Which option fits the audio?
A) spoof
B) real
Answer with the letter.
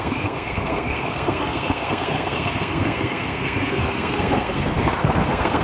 A